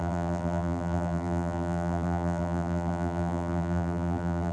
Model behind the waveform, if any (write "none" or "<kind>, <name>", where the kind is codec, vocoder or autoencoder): vocoder, BigVGAN v2